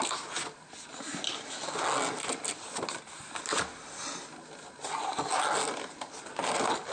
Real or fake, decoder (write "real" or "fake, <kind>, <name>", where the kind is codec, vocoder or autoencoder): real